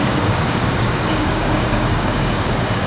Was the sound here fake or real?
fake